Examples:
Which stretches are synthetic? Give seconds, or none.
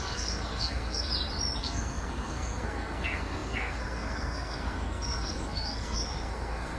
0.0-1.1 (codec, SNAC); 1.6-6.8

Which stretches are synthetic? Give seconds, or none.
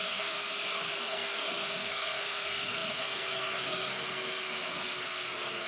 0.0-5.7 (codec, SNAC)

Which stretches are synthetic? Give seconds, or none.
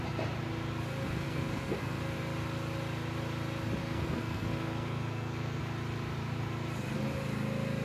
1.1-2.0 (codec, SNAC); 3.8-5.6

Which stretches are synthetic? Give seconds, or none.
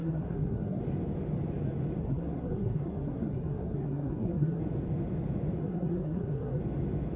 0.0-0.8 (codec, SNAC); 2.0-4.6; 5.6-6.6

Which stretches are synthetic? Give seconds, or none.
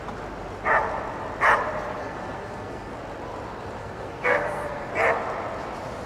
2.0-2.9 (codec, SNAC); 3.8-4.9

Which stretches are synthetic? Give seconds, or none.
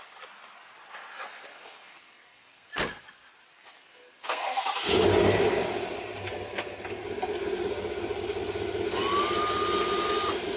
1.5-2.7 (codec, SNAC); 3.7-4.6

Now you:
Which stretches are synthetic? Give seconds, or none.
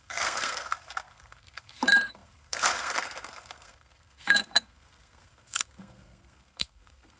0.0-7.2 (codec, SNAC)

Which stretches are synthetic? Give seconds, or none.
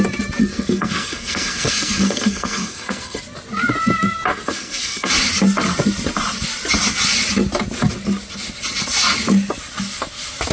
0.4-3.2 (codec, SNAC); 4.3-5.1